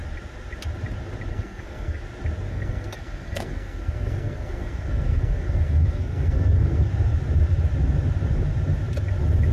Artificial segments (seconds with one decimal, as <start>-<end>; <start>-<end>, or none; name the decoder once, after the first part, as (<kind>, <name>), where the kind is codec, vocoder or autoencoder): 1.3-2.0 (codec, SNAC); 2.5-6.9